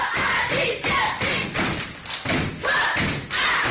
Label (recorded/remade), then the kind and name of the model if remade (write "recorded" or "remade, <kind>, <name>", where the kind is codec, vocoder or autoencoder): recorded